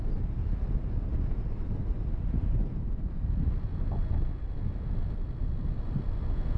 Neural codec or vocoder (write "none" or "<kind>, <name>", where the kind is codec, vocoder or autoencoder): none